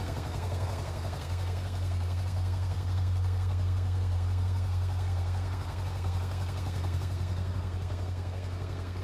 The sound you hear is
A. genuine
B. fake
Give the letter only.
B